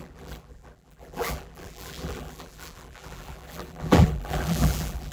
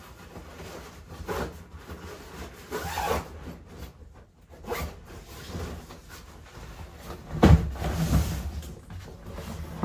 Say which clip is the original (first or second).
second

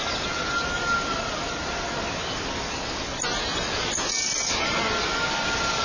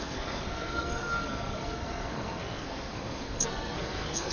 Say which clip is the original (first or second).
first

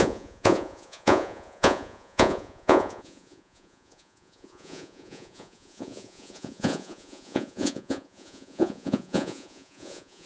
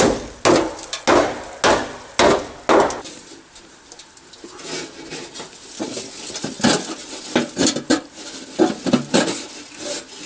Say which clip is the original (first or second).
second